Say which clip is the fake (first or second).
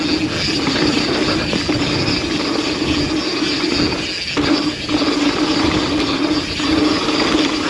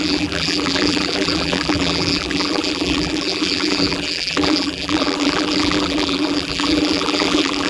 second